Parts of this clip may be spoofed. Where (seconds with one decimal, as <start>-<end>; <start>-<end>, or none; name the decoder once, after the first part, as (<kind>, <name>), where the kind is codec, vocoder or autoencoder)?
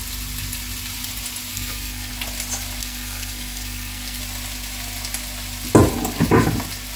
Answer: 1.5-2.1 (codec, SNAC); 2.8-4.2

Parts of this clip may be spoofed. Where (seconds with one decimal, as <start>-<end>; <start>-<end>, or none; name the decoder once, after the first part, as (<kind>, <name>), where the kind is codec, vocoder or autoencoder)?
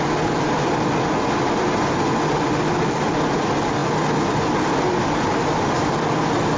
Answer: none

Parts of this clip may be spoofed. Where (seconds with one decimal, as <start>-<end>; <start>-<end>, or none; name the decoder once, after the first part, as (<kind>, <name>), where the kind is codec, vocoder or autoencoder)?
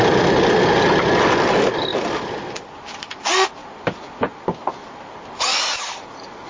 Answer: none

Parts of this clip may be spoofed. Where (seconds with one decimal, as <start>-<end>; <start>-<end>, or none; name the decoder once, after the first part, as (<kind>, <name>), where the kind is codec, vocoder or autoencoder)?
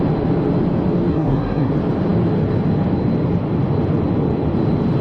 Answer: 1.1-1.7 (codec, SNAC)